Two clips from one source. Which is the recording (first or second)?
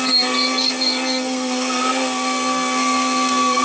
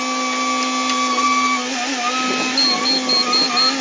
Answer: second